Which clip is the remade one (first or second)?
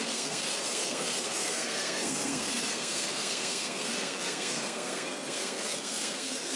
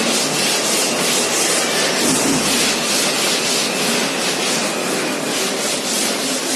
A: first